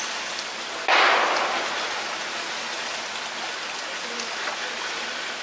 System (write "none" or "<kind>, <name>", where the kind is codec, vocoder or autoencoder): none